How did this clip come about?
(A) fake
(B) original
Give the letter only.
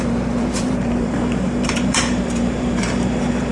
A